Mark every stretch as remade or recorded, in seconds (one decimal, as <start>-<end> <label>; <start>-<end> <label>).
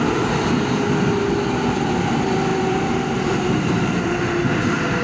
0.0-2.5 recorded; 2.5-4.1 remade; 4.1-5.0 recorded